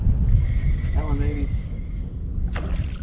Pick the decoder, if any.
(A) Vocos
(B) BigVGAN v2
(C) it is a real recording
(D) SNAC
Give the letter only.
C